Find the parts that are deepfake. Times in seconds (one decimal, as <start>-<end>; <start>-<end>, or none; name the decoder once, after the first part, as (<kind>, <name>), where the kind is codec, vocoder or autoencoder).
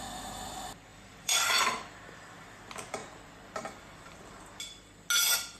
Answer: 0.9-2.0 (vocoder, BigVGAN v2); 3.0-3.8